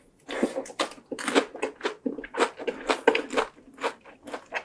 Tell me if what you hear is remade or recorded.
recorded